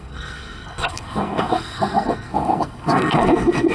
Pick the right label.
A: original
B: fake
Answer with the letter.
B